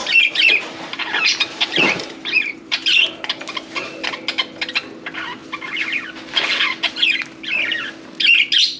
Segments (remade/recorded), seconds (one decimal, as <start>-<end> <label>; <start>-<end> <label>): 0.0-3.0 remade; 3.0-8.8 recorded